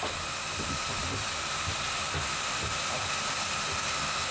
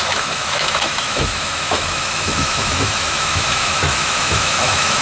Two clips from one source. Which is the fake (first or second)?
second